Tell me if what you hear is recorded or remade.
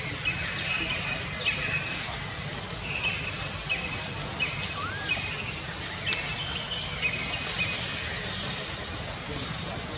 recorded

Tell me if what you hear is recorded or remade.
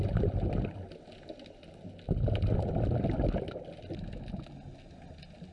recorded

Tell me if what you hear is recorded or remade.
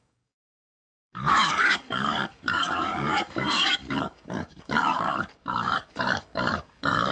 remade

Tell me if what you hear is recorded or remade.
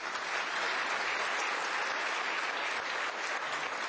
recorded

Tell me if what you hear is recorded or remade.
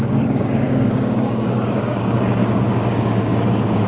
remade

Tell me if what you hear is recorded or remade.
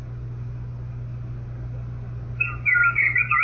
recorded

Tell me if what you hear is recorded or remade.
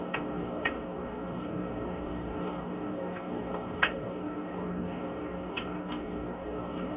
remade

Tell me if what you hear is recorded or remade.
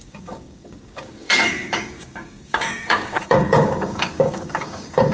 remade